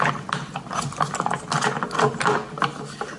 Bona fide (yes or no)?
yes